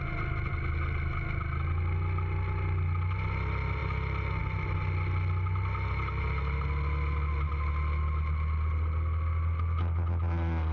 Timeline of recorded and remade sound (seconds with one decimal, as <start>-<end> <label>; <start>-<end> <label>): 0.0-10.7 recorded